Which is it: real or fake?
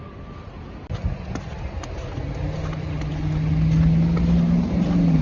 real